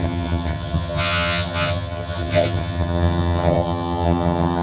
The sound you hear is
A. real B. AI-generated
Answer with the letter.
B